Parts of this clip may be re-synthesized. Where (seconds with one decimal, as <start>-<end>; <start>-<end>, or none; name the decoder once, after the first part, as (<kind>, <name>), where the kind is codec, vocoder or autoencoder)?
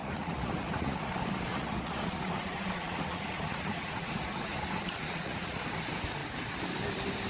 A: 0.0-1.1 (vocoder, Vocos); 1.5-5.6